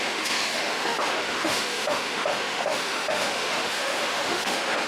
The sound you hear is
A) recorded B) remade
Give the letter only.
B